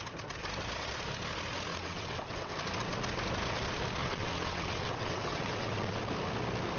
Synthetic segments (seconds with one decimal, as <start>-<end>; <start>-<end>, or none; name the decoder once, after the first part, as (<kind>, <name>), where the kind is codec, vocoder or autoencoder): 1.7-2.5 (vocoder, WaveNeXt); 4.0-6.0